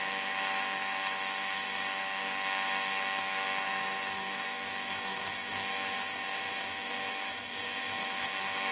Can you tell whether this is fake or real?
fake